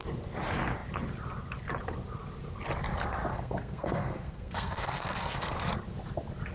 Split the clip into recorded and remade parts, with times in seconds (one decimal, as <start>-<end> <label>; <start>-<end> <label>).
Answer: 0.0-3.3 recorded; 3.3-5.7 remade; 5.7-6.5 recorded